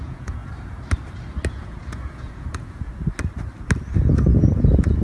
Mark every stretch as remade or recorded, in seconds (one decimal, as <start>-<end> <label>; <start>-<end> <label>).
0.0-0.4 remade; 0.4-1.5 recorded; 1.5-2.9 remade; 2.9-4.5 recorded; 4.5-5.0 remade